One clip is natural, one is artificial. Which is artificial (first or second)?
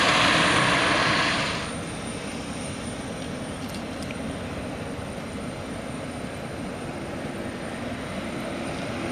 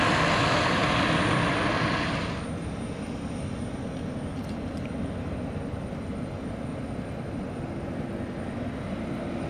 first